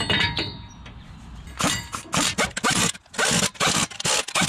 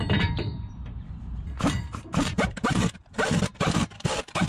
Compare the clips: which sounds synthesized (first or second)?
second